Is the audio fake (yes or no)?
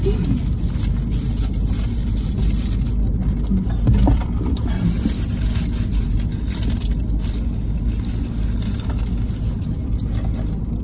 no